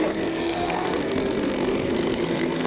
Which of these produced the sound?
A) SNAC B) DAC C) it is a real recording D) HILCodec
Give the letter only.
A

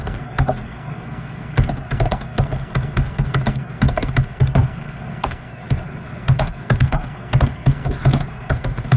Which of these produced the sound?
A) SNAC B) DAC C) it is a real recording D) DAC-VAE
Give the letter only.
A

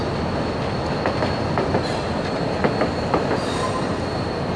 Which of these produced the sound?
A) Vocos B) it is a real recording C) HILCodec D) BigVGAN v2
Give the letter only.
B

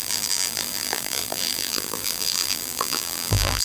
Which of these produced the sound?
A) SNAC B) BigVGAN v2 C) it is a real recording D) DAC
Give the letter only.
B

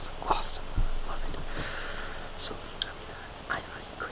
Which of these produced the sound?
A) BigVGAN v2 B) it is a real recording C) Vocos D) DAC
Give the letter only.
B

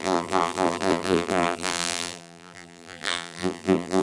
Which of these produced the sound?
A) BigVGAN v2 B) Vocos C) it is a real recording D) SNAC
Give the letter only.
A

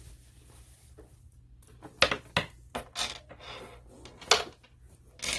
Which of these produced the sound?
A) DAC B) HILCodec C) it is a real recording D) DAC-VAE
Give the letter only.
C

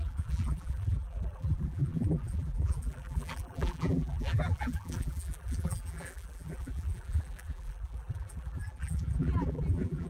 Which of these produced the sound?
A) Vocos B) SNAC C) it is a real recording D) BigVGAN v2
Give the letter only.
D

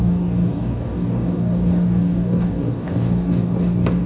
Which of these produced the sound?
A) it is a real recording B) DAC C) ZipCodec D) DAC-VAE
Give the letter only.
B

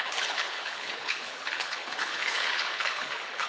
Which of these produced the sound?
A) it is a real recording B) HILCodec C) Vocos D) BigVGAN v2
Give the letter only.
B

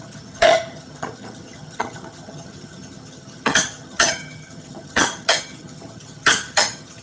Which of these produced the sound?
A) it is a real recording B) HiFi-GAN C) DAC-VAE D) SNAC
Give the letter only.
B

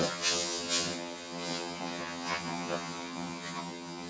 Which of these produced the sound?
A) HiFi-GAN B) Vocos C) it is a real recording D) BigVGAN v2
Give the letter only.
A